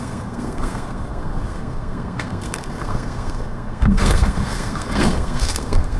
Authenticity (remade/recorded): remade